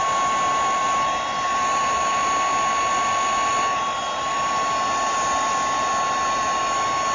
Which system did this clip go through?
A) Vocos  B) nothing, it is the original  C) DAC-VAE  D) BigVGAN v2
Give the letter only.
D